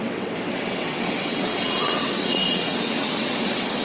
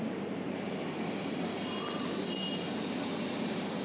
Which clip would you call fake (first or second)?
first